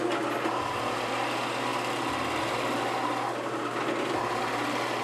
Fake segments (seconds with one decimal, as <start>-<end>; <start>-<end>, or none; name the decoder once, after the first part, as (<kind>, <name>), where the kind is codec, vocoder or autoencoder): none